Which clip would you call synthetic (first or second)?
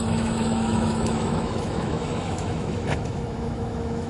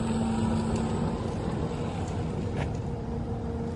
first